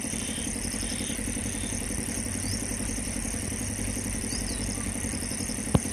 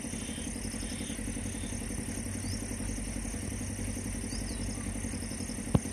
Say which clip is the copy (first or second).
first